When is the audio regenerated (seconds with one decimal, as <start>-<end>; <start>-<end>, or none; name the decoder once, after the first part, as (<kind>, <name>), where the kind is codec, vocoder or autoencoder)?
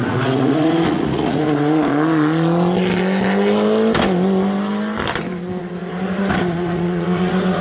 0.0-1.9 (vocoder, Vocos); 5.6-7.6